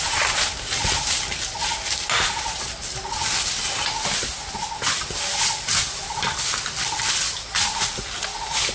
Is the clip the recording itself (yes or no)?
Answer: yes